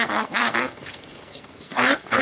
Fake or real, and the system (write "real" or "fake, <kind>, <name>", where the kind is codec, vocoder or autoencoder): fake, codec, SNAC